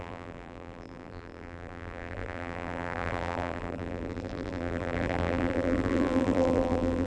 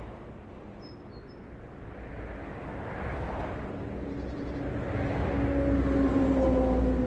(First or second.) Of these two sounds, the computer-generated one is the first